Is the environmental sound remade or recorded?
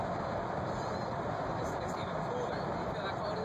recorded